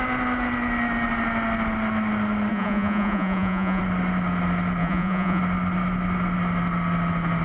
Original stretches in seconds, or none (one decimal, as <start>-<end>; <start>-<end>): 0.0-2.5; 3.8-4.8; 5.4-7.4

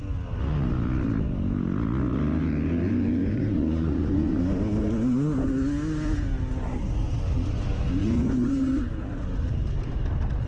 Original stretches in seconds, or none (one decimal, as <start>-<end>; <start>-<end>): 0.0-3.2; 4.4-8.0; 8.6-10.5

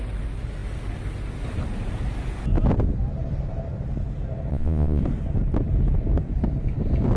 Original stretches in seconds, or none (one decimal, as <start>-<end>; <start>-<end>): 0.0-4.5; 5.0-7.2

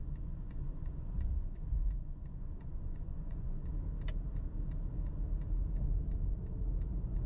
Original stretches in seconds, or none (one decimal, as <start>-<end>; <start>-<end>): 3.7-7.3

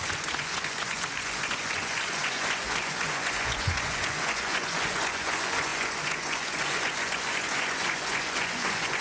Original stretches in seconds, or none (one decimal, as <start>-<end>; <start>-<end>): none

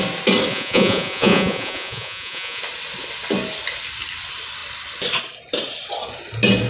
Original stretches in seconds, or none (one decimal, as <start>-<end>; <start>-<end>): 0.0-0.5; 2.6-6.7